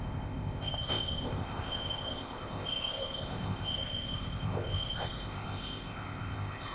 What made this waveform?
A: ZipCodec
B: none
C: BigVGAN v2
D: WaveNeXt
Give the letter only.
A